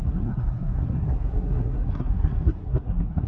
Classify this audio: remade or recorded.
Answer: remade